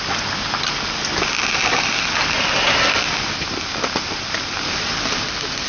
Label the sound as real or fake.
real